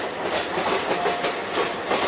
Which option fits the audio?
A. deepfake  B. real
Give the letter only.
B